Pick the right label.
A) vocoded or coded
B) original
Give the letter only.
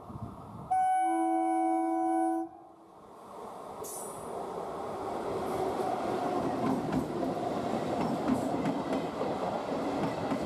B